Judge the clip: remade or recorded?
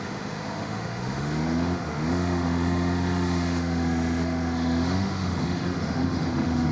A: remade